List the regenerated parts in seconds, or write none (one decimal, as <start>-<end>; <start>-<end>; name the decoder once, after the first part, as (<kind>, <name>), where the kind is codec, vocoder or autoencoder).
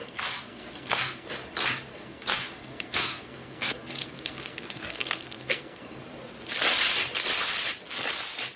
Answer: 0.0-1.3 (codec, SNAC); 1.9-6.0